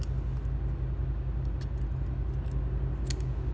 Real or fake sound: real